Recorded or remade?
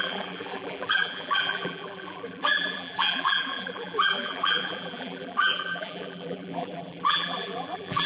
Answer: remade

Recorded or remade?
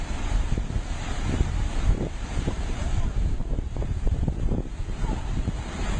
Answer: remade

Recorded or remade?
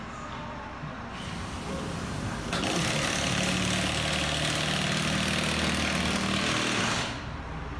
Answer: recorded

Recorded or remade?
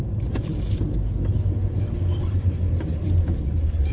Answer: recorded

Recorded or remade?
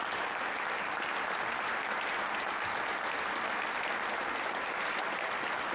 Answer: recorded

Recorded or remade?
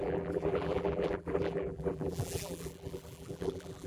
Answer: remade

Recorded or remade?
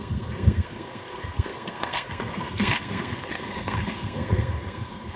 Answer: remade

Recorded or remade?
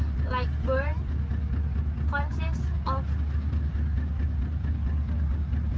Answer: recorded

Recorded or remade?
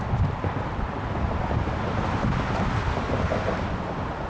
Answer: recorded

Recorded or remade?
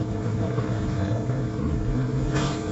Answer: remade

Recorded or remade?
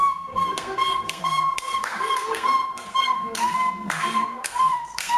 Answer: remade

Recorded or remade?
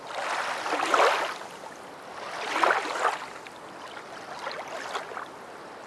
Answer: recorded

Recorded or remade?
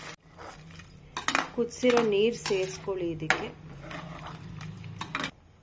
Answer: recorded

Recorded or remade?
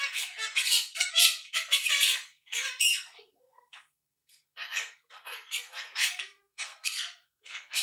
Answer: remade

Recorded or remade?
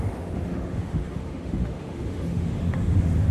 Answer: remade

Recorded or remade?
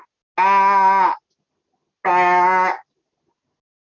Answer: recorded